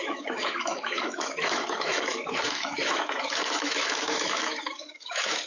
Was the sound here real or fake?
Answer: fake